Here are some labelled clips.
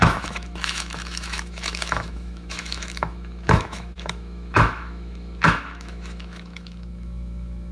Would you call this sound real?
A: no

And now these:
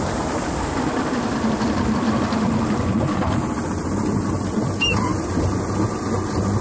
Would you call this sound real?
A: yes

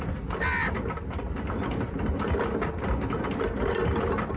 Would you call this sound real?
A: yes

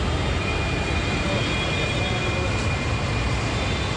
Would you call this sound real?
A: yes